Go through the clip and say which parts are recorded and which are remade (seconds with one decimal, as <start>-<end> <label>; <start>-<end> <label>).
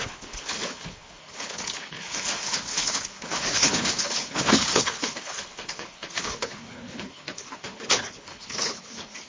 0.0-9.3 remade